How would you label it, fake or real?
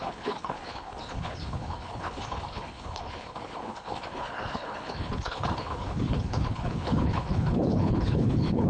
fake